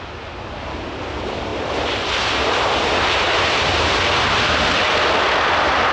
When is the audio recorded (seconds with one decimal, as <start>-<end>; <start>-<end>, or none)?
0.0-5.9